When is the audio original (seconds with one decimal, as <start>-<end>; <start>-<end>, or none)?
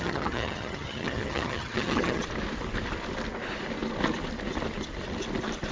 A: 2.2-5.7